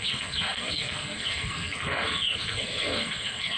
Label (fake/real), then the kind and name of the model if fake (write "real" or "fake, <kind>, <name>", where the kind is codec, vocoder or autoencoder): fake, codec, SNAC